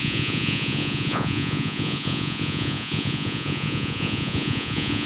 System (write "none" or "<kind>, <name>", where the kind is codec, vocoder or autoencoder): vocoder, Vocos